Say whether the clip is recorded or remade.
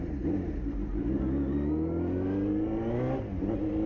recorded